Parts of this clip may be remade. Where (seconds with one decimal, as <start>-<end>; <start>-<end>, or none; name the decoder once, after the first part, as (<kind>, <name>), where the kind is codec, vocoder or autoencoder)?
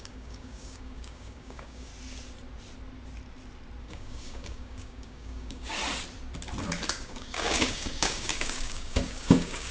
0.0-1.9 (codec, DAC); 3.8-5.8; 6.9-9.7